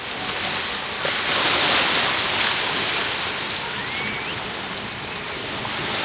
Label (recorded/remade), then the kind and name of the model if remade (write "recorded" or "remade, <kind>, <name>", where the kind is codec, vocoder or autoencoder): recorded